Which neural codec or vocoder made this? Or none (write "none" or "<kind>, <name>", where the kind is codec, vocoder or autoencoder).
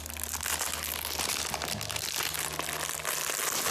none